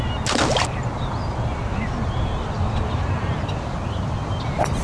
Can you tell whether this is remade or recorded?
recorded